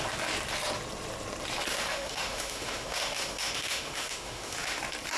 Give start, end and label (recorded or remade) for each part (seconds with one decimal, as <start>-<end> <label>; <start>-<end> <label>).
0.0-1.7 recorded; 1.7-4.8 remade; 4.8-5.2 recorded